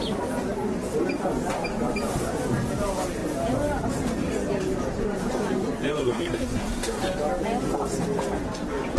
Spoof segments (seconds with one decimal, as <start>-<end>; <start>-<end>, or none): 6.0-7.0